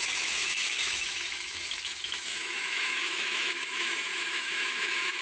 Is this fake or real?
fake